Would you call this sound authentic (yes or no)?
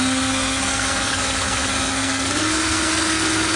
no